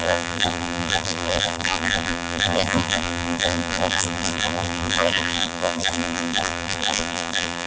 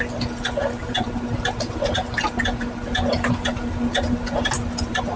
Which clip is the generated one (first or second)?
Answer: first